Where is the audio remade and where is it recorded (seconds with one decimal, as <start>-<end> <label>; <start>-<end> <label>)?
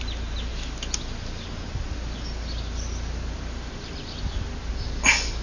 0.0-5.4 recorded